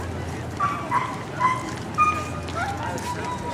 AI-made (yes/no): no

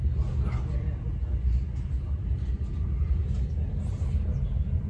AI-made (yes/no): no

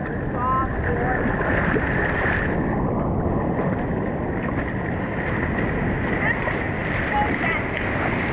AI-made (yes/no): no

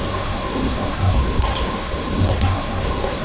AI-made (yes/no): yes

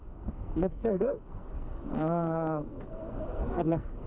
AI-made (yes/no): yes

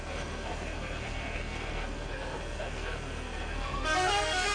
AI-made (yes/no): yes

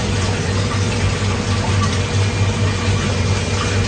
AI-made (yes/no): no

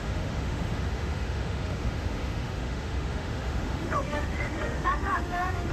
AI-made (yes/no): yes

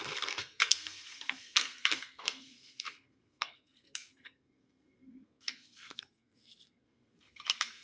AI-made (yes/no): yes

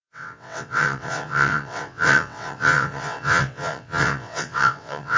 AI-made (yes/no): yes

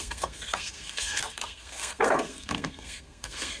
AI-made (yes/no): yes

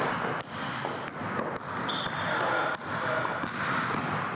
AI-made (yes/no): no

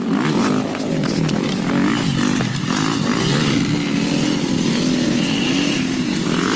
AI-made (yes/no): no